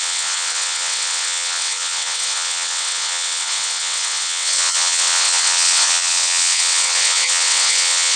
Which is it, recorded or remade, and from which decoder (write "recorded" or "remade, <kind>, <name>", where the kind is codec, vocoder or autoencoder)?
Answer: remade, vocoder, WaveNeXt